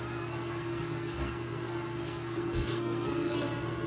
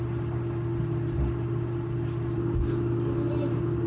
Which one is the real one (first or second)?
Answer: second